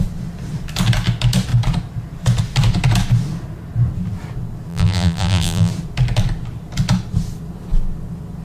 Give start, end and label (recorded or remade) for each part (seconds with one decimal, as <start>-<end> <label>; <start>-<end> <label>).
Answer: 0.0-4.7 recorded; 4.7-5.7 remade; 5.7-8.4 recorded